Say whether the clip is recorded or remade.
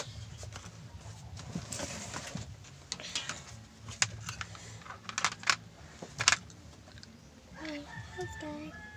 recorded